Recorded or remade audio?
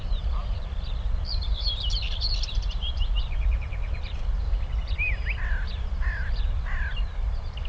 remade